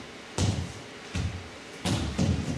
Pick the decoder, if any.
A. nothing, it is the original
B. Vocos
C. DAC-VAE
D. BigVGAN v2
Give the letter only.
A